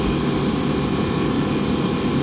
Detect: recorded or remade recorded